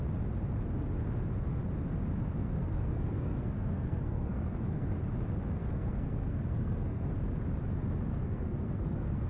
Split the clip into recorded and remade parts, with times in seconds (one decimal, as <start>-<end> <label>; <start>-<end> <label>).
0.0-2.2 recorded; 2.2-5.0 remade; 5.0-5.6 recorded; 5.6-7.1 remade; 7.1-8.1 recorded; 8.1-9.3 remade

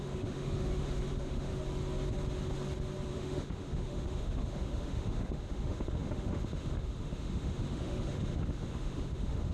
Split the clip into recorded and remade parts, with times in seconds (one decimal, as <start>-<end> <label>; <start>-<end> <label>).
0.0-1.5 remade; 1.5-3.1 recorded; 3.1-9.5 remade

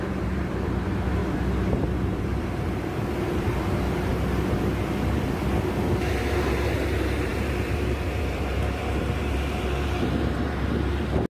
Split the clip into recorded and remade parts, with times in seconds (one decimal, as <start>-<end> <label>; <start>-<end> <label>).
0.0-1.2 remade; 1.2-2.2 recorded; 2.2-4.1 remade; 4.1-5.6 recorded; 5.6-11.3 remade